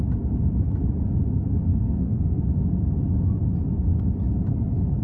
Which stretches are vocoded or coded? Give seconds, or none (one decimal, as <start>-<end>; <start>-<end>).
1.7-2.4